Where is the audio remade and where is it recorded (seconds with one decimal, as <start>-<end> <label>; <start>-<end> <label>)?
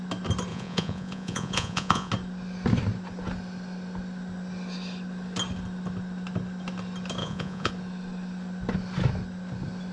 0.0-0.5 recorded; 0.5-2.1 remade; 2.1-7.2 recorded; 7.2-7.7 remade; 7.7-9.9 recorded